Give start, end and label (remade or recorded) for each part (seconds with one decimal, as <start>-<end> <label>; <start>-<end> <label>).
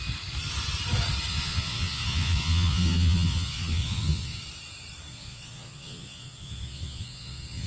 0.0-1.3 recorded; 1.3-4.4 remade; 4.4-5.1 recorded; 5.1-7.7 remade